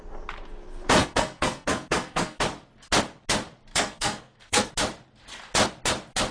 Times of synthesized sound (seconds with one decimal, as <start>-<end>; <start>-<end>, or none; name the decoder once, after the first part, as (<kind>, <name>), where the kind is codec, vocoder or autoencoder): 1.0-2.4 (codec, SNAC); 3.7-4.7